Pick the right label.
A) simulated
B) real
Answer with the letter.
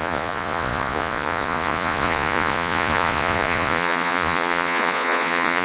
A